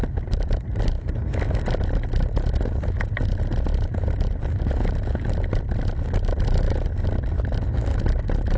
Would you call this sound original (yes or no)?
yes